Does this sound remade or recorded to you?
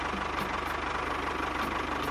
recorded